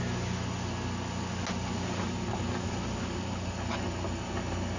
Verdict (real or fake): real